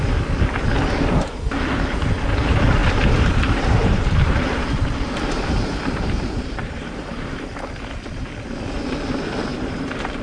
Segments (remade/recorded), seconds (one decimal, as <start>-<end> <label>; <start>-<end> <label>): 0.0-2.8 recorded; 2.8-7.5 remade; 7.5-9.5 recorded; 9.5-10.2 remade